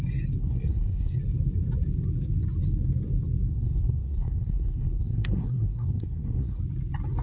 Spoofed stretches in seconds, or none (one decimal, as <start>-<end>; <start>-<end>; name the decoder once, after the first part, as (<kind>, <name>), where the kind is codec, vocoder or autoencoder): 0.4-1.2 (codec, SNAC); 3.5-6.6